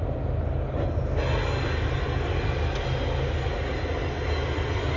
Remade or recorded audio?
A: recorded